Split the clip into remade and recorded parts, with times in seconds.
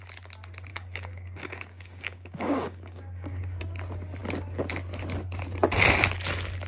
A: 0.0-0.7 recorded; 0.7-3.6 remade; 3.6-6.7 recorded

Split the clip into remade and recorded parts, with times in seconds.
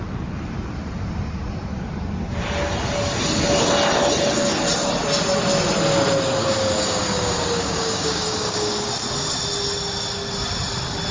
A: 0.0-6.4 recorded; 6.4-8.9 remade; 8.9-11.1 recorded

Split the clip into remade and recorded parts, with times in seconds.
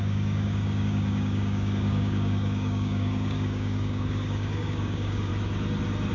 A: 0.0-5.3 remade; 5.3-6.1 recorded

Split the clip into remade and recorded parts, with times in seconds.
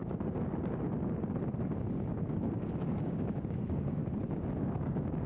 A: 0.0-2.1 recorded; 2.1-4.0 remade; 4.0-4.6 recorded; 4.6-5.3 remade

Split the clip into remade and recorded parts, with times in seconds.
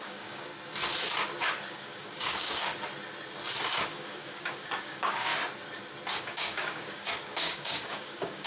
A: 0.0-0.5 remade; 0.5-1.7 recorded; 1.7-2.7 remade; 2.7-3.9 recorded; 3.9-5.3 remade; 5.3-6.2 recorded; 6.2-8.5 remade